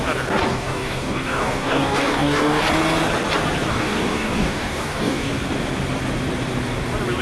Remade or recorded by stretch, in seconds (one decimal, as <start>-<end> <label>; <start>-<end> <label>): 0.0-0.5 recorded; 0.5-2.6 remade; 2.6-3.7 recorded; 3.7-5.3 remade; 5.3-7.2 recorded